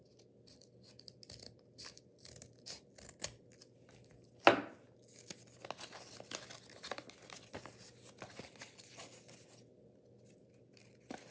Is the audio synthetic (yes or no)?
no